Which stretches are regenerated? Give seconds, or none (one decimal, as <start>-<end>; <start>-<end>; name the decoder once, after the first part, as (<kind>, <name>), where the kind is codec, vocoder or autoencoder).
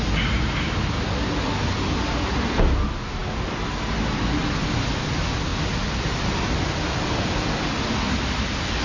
none